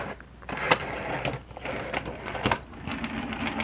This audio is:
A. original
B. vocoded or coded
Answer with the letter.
A